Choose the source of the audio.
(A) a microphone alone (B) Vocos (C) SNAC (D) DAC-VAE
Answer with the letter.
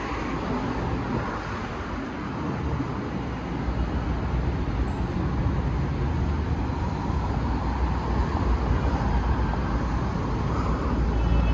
A